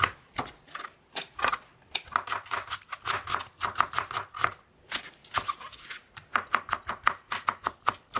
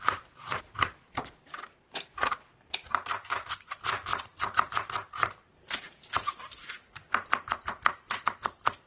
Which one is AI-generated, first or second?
second